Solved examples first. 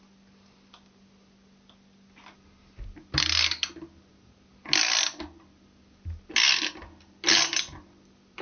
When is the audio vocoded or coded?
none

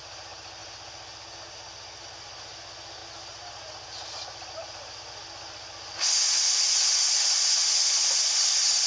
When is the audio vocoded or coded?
none

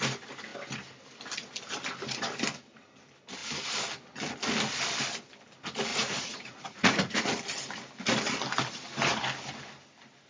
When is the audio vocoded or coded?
5.9-7.2 (vocoder, Vocos)

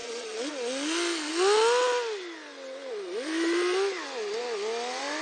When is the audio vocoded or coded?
0.0-0.5 (vocoder, Vocos)

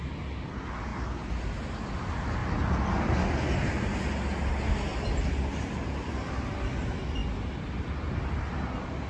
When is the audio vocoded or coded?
none

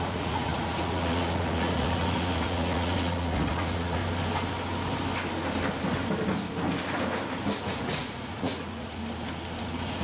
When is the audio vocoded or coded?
0.0-4.0 (vocoder, Vocos); 7.6-9.0; 9.6-10.0

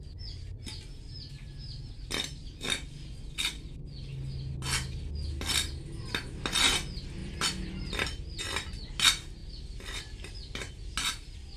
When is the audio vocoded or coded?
7.2-8.4 (vocoder, BigVGAN v2)

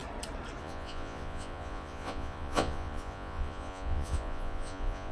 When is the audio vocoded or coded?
0.6-5.1 (vocoder, Vocos)